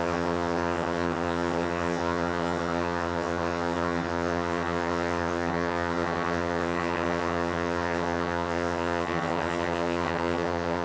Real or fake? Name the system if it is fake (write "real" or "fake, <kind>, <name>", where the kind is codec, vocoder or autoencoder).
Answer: fake, vocoder, HiFi-GAN